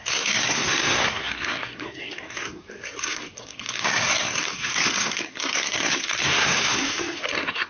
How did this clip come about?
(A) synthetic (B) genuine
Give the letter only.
A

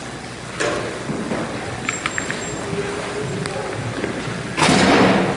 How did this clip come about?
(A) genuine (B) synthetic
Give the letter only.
A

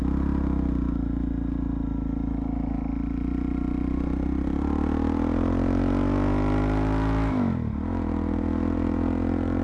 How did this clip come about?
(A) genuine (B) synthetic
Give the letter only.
A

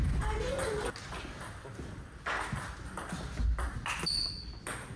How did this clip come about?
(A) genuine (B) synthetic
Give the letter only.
A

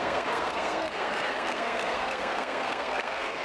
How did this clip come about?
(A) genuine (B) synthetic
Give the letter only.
B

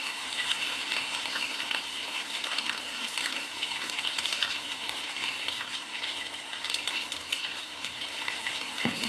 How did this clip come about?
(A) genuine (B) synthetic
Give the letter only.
B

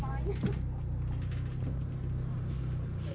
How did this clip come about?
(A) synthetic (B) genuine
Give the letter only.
B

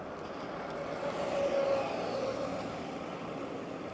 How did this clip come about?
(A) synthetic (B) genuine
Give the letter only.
B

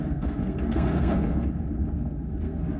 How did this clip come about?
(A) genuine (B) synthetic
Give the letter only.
B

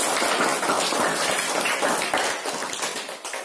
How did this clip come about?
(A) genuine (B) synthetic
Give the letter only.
A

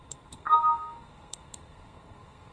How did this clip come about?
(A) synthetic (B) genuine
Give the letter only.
A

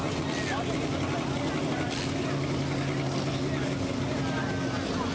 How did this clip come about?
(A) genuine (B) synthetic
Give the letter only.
A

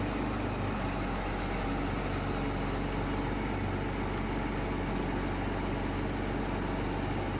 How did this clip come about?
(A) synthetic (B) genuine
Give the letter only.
B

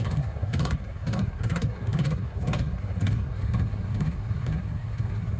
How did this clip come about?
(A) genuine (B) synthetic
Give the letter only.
B